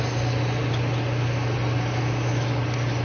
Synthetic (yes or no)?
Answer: no